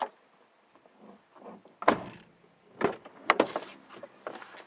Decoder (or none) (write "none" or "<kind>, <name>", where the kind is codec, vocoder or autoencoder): none